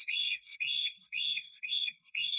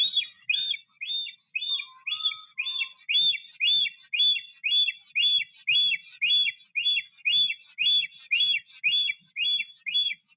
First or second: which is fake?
first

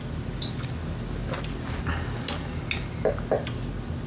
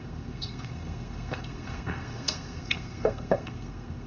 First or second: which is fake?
second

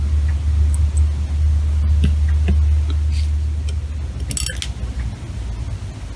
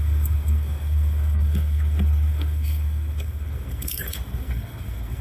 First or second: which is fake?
second